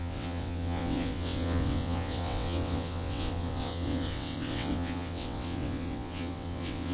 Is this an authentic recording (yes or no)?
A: no